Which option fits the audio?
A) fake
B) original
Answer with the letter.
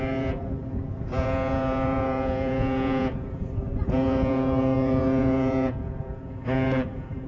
A